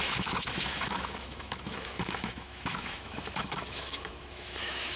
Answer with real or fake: fake